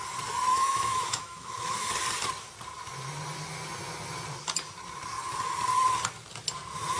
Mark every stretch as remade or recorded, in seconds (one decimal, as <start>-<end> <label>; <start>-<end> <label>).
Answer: 0.0-0.5 recorded; 0.5-2.0 remade; 2.0-7.0 recorded